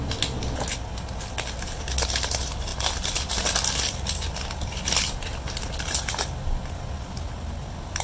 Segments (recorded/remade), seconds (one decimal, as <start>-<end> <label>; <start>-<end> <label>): 0.0-8.0 recorded